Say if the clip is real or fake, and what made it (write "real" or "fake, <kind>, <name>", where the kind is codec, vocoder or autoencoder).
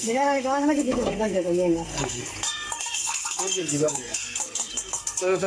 fake, codec, SNAC